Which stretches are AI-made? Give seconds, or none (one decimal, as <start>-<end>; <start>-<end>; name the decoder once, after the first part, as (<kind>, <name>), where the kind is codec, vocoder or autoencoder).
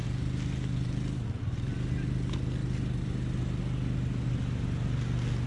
none